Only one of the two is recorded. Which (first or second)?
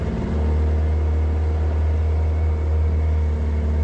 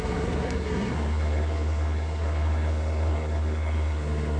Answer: first